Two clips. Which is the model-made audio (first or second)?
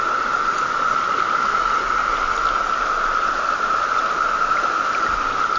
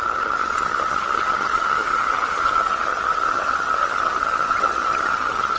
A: second